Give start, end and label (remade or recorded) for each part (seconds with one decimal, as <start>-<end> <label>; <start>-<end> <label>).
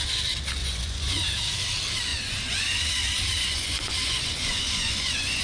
0.0-0.6 recorded; 0.6-1.2 remade; 1.2-2.1 recorded; 2.1-5.4 remade